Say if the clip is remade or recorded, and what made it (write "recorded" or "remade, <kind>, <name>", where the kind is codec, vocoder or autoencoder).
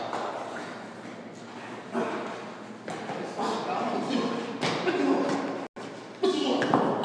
recorded